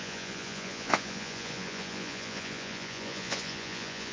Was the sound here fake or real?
fake